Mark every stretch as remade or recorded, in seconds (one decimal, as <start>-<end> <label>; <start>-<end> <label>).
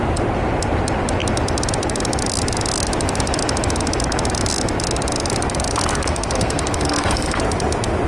0.0-6.1 recorded; 6.1-7.4 remade; 7.4-8.1 recorded